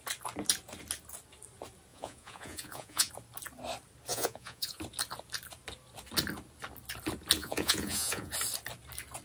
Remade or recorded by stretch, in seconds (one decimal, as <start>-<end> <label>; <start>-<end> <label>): 0.0-1.9 recorded; 1.9-3.1 remade; 3.1-4.1 recorded; 4.1-4.8 remade; 4.8-7.4 recorded; 7.4-8.3 remade; 8.3-9.2 recorded